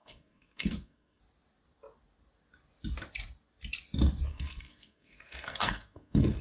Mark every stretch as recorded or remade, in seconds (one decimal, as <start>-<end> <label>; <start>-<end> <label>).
0.0-1.2 remade; 1.2-4.3 recorded; 4.3-6.4 remade